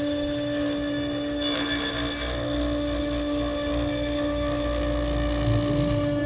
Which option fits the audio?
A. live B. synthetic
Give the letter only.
A